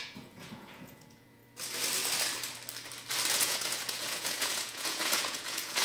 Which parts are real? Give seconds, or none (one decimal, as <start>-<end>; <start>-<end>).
1.4-3.3